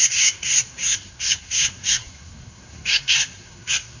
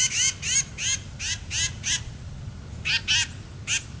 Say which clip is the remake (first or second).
first